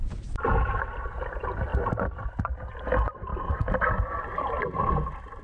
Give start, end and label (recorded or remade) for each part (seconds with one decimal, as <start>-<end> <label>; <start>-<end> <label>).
0.0-5.4 recorded